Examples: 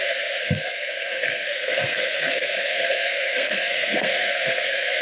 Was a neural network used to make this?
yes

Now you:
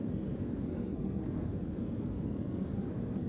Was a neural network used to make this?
yes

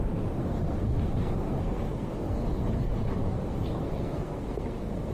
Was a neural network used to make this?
yes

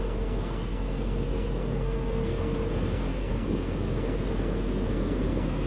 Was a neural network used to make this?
yes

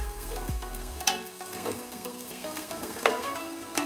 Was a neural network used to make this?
yes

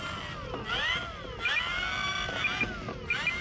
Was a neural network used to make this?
no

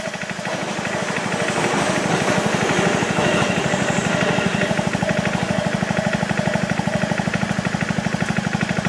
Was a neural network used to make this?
no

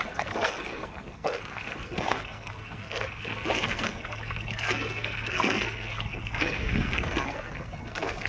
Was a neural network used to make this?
yes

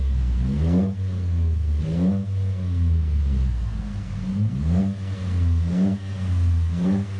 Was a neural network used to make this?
yes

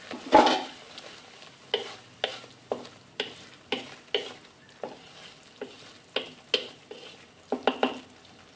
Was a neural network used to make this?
no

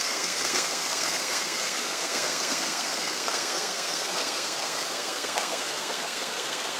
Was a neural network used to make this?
yes